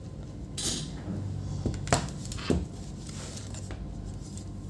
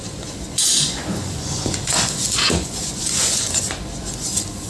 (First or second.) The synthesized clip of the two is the second